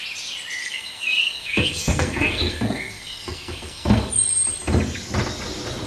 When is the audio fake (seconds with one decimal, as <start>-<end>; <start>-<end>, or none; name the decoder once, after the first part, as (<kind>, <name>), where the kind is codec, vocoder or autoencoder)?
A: 0.6-4.1 (codec, SNAC)